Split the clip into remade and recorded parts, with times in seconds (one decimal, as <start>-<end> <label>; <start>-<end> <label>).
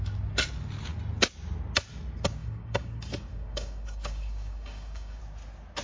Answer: 0.0-2.4 recorded; 2.4-5.2 remade; 5.2-5.8 recorded